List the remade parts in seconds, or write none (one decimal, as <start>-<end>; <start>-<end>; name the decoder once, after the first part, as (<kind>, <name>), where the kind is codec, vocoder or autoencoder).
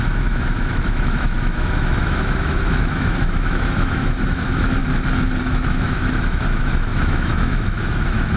0.0-4.8 (autoencoder, DAC-VAE); 5.4-8.4